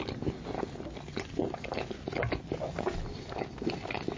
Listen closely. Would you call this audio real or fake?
real